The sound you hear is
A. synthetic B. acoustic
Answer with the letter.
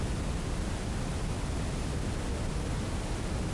B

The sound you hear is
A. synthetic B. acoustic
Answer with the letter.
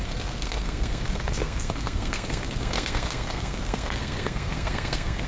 A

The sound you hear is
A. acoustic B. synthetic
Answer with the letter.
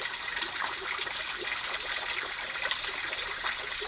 A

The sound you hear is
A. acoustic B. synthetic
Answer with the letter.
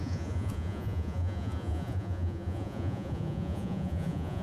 B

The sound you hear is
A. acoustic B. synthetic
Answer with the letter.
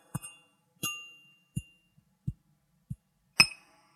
A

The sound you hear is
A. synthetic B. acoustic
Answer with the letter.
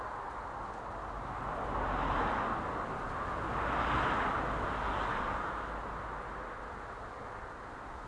B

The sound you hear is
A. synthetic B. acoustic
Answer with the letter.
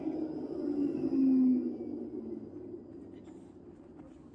B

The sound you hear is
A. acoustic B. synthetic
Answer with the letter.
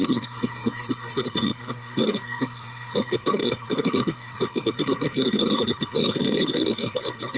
B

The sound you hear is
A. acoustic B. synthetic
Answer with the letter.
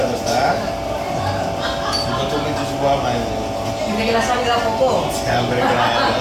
A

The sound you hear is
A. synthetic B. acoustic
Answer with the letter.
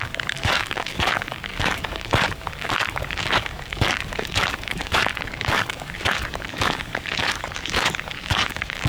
A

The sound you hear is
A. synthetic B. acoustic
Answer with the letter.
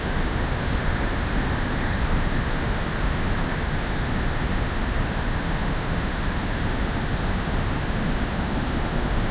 A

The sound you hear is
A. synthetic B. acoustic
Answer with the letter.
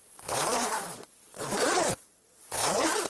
A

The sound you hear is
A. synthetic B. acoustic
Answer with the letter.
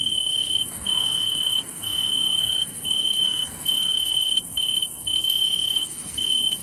A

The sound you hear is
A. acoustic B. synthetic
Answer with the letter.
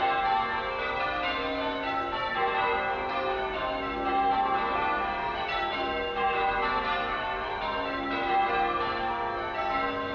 A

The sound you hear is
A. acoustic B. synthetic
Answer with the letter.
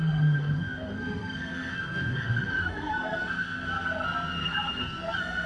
B